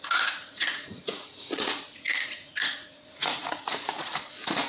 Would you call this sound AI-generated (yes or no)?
yes